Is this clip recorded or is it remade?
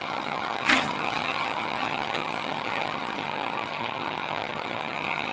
remade